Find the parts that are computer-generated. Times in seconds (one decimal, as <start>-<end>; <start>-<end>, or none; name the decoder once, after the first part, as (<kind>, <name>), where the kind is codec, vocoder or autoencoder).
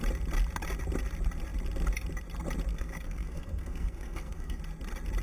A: 2.7-4.6 (codec, SNAC)